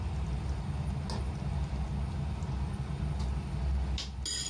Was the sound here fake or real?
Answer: real